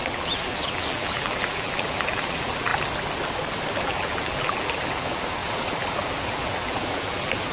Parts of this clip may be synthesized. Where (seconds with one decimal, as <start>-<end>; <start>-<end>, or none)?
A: 0.0-2.7; 3.7-7.5